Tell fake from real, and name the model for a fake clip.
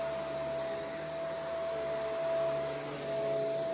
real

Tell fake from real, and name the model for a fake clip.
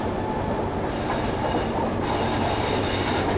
real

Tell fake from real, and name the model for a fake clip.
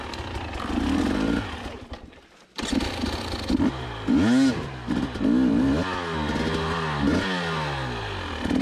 real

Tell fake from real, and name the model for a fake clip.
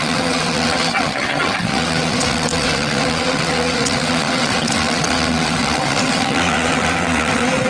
fake, vocoder, WaveNeXt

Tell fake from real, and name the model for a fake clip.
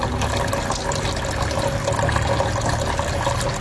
real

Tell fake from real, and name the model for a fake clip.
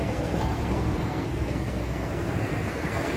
fake, codec, SNAC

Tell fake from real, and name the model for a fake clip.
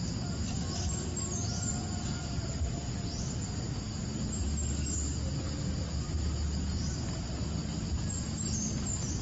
real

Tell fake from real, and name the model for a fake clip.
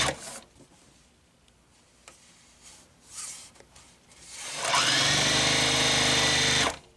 real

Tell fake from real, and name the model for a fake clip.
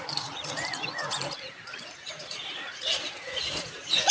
fake, vocoder, Vocos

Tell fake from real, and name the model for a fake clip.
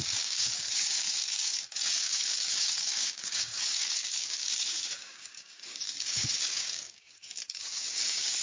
fake, codec, DAC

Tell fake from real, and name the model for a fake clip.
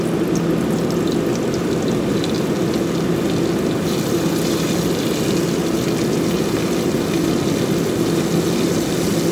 real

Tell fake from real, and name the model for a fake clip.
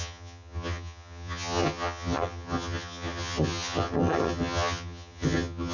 fake, vocoder, HiFi-GAN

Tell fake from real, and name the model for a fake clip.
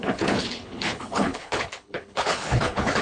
fake, codec, HILCodec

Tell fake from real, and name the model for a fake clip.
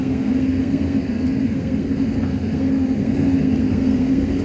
fake, codec, SNAC